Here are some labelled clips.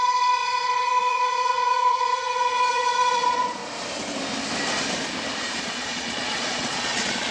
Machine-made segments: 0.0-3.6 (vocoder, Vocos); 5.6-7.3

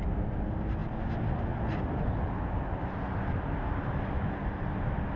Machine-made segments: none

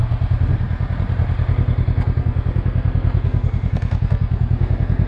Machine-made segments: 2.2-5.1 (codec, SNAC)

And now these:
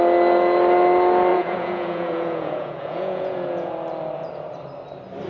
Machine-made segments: 1.3-3.7 (vocoder, Vocos)